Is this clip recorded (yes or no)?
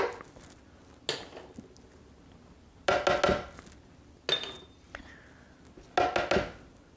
yes